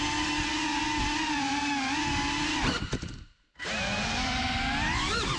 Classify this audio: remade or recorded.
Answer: recorded